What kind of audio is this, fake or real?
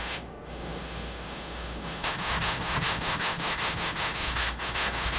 fake